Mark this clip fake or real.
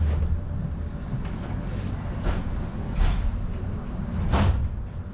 real